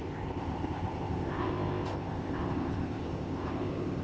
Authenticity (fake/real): fake